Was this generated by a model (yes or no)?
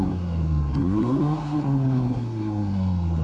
yes